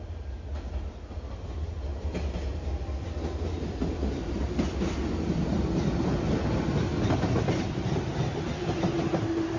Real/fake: real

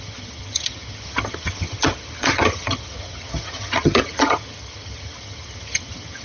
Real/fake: fake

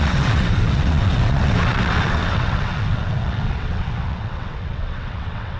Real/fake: fake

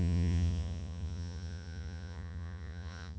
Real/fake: fake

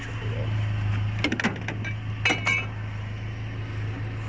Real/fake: real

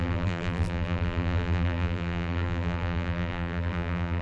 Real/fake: fake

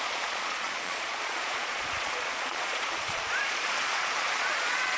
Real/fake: fake